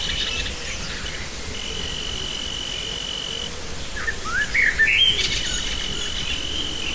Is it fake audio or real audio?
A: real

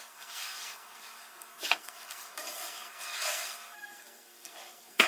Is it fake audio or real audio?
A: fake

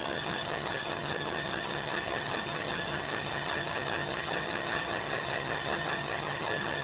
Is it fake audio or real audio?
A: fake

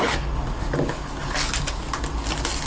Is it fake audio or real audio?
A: real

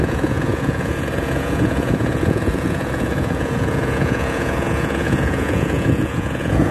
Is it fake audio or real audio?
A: fake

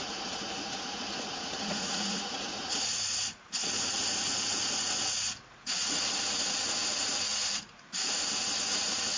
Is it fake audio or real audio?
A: fake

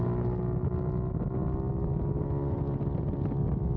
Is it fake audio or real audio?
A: real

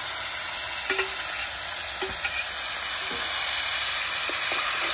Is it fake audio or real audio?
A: real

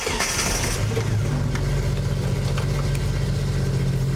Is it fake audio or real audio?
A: real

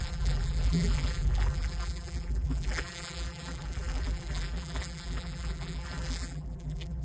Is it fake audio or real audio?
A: fake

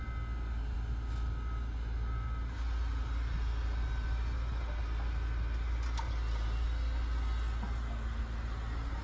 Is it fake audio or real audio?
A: real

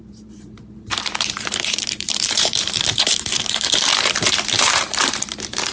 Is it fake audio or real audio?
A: fake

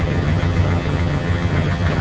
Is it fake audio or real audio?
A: fake